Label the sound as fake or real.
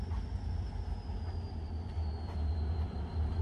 real